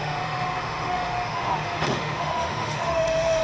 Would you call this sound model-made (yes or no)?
yes